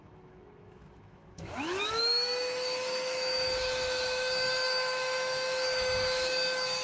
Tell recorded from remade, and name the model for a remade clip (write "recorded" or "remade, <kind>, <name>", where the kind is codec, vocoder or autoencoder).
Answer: remade, autoencoder, DAC-VAE